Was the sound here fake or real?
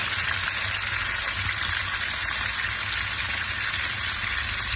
real